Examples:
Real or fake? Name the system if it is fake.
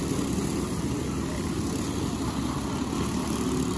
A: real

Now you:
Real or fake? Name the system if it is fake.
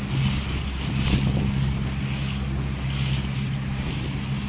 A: real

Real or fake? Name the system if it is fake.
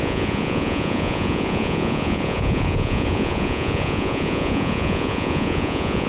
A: fake, vocoder, Vocos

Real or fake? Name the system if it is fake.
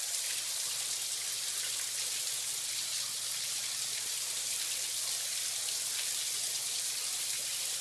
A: real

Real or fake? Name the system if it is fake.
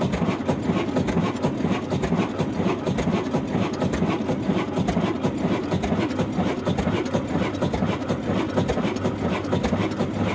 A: real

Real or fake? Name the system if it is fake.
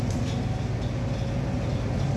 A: real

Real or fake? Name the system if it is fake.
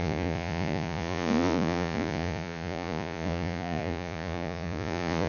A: fake, vocoder, Vocos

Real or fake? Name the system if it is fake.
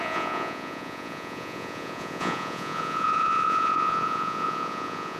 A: fake, vocoder, Vocos